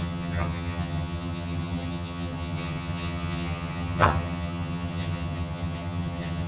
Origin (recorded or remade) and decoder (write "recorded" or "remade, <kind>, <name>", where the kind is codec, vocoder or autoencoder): remade, vocoder, HiFi-GAN